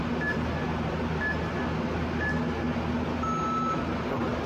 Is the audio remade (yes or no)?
no